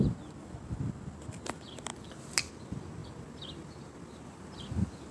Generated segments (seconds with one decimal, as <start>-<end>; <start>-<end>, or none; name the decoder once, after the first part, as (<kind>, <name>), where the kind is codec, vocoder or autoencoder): none